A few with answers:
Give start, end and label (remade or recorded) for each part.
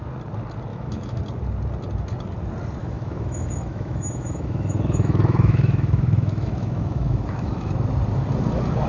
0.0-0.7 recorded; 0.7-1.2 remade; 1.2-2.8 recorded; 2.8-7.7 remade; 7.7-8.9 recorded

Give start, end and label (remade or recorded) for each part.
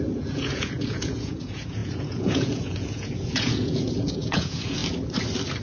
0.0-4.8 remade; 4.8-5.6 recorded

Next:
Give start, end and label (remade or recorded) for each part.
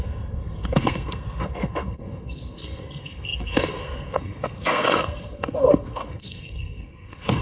0.0-7.4 remade